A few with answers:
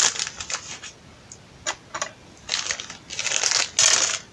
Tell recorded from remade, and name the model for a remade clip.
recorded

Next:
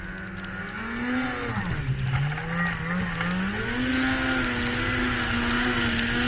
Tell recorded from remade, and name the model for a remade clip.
recorded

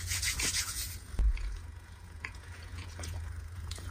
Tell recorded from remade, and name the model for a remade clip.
remade, vocoder, Vocos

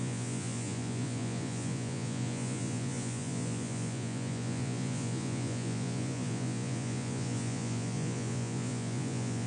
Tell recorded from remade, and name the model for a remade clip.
remade, vocoder, Vocos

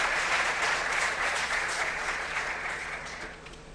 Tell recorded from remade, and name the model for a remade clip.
remade, vocoder, Vocos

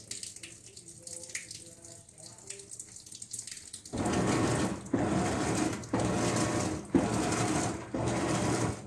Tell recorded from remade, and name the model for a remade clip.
recorded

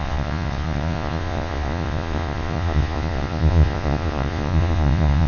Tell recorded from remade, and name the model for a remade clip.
remade, vocoder, Vocos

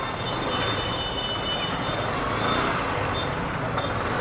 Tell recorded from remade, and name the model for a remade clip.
recorded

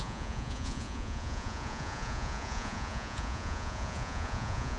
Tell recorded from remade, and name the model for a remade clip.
remade, vocoder, Vocos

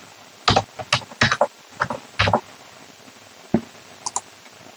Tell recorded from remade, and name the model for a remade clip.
recorded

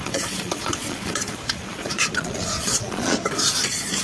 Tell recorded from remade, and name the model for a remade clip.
remade, vocoder, Vocos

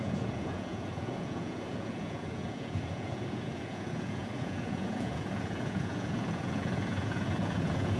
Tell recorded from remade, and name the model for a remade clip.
remade, vocoder, Vocos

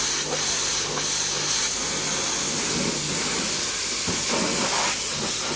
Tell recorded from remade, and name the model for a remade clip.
recorded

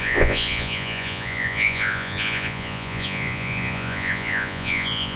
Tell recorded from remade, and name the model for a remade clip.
remade, vocoder, Vocos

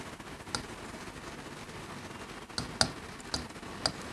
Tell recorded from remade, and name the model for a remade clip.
recorded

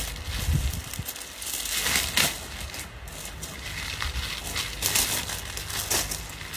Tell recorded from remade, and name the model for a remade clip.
recorded